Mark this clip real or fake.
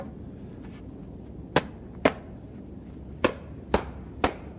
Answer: real